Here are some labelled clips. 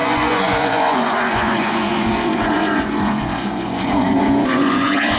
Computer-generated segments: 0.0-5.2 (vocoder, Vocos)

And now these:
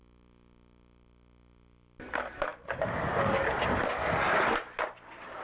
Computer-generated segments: none

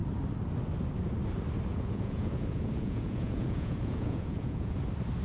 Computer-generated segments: 1.7-4.8 (vocoder, Vocos)

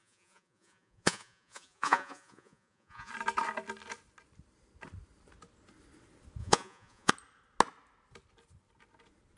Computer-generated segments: 0.0-3.1 (vocoder, Vocos); 6.4-7.1

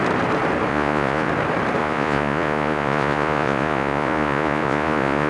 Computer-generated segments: 0.7-1.3 (vocoder, Vocos); 1.8-5.3